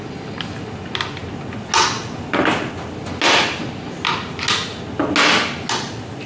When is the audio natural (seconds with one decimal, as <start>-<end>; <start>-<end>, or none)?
0.0-6.3

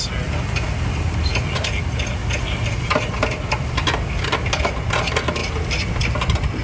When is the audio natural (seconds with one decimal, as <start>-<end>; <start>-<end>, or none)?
0.0-6.6

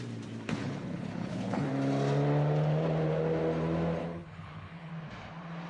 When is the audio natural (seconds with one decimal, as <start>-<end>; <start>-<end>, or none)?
0.0-0.6; 1.7-4.0; 4.9-5.7

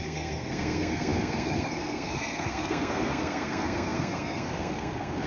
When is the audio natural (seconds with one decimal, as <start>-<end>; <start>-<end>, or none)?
none

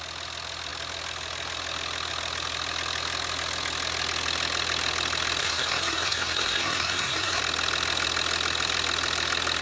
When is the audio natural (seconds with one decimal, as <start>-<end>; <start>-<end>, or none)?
0.0-5.4; 7.4-9.6

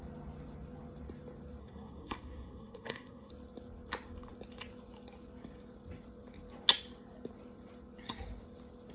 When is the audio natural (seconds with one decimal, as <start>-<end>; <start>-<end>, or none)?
0.0-1.6; 3.3-8.9